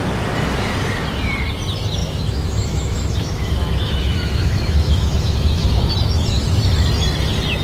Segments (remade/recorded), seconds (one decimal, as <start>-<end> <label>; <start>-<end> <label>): 0.0-2.0 recorded; 2.0-5.9 remade; 5.9-7.6 recorded